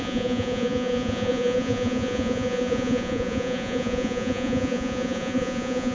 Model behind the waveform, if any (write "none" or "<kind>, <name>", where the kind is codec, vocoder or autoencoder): vocoder, Vocos